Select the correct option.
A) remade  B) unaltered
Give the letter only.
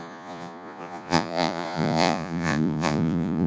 A